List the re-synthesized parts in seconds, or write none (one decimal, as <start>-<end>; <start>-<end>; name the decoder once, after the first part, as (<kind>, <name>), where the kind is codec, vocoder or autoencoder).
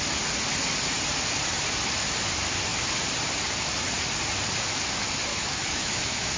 5.3-6.4 (autoencoder, DAC-VAE)